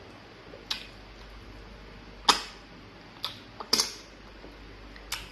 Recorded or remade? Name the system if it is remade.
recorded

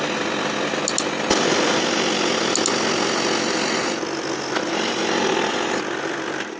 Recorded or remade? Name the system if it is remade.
recorded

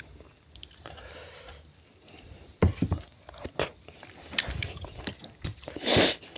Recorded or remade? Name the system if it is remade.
recorded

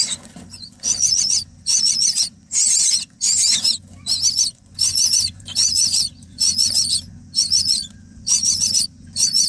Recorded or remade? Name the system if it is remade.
remade, vocoder, Vocos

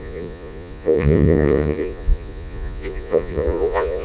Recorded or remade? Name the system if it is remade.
remade, vocoder, Vocos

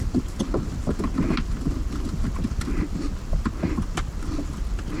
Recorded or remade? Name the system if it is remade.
recorded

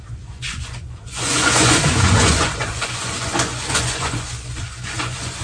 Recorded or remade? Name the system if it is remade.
remade, vocoder, Vocos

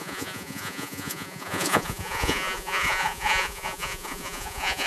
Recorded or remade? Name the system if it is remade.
remade, vocoder, Vocos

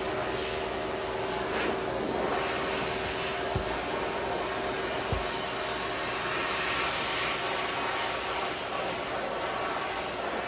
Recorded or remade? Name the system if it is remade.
recorded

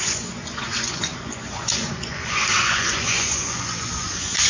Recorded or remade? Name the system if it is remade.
remade, vocoder, Vocos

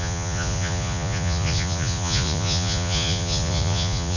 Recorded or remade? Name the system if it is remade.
remade, vocoder, Vocos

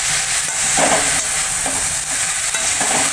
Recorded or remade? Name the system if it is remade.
recorded